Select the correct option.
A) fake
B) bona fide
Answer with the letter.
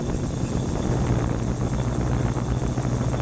B